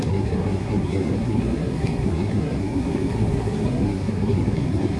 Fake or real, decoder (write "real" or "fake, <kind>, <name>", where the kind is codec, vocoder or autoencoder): fake, codec, SNAC